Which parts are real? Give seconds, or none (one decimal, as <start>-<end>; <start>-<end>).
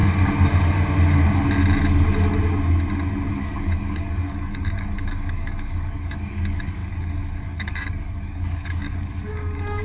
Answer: 0.0-3.3